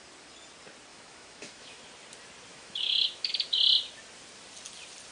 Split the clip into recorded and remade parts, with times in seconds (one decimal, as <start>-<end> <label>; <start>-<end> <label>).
0.0-0.9 recorded; 0.9-1.8 remade; 1.8-2.5 recorded; 2.5-3.3 remade; 3.3-5.1 recorded